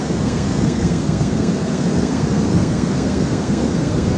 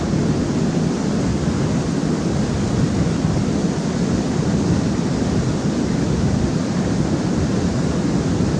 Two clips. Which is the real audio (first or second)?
second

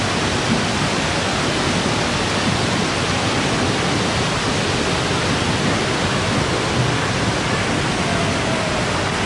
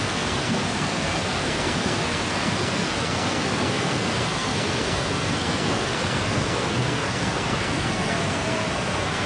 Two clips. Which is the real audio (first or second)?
first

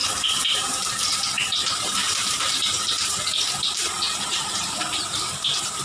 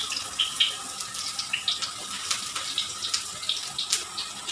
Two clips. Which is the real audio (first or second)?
second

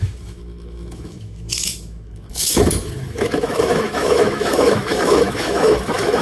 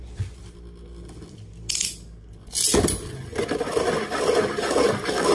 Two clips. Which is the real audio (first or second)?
second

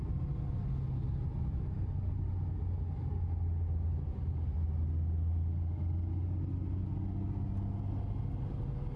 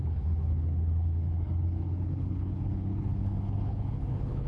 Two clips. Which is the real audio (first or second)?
first